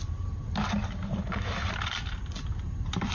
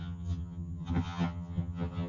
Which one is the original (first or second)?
first